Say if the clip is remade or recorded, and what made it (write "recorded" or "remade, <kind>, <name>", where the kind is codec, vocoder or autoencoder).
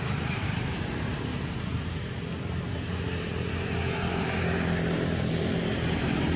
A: remade, vocoder, BigVGAN v2